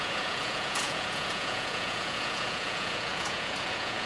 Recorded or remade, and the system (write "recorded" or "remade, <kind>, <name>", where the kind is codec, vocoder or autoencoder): remade, vocoder, Vocos